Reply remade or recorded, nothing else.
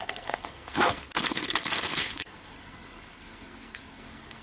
remade